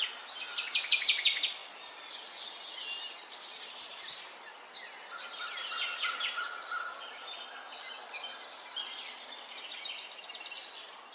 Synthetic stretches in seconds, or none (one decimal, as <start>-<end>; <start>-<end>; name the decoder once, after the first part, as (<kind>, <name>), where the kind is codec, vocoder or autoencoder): none